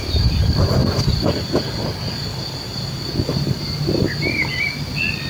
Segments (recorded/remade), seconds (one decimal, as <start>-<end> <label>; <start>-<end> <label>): 0.0-3.3 recorded; 3.3-4.0 remade; 4.0-5.3 recorded